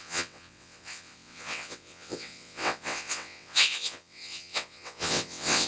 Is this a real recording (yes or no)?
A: no